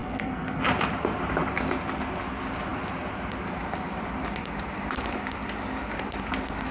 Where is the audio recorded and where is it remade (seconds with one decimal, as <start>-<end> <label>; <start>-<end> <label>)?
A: 0.0-0.6 remade; 0.6-6.7 recorded